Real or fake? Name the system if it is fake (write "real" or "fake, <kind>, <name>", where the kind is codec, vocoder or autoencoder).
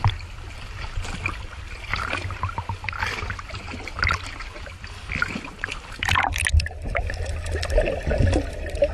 real